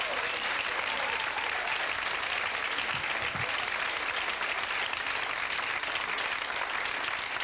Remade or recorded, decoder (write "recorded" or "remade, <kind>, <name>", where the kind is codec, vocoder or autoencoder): recorded